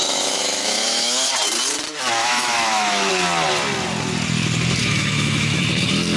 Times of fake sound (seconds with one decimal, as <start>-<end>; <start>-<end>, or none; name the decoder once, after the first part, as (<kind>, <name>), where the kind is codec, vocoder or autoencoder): 0.0-1.3 (autoencoder, DAC-VAE); 2.2-3.1; 4.8-5.6